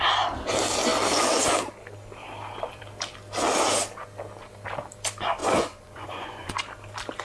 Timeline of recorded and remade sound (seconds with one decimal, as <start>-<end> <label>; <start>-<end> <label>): 0.0-5.4 recorded; 5.4-6.6 remade; 6.6-7.2 recorded